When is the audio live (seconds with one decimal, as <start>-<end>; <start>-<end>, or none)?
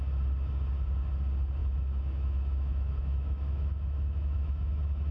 0.0-1.6